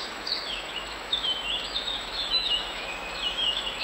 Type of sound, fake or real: fake